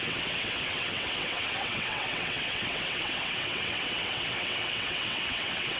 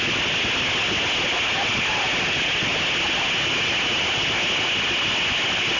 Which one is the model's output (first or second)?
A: first